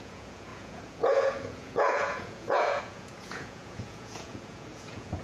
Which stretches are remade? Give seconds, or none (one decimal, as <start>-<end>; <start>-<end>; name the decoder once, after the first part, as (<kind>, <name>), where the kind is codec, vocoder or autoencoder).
0.0-5.2 (vocoder, Vocos)